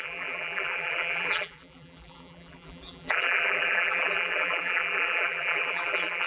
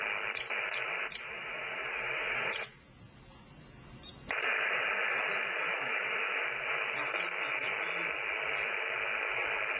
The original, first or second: second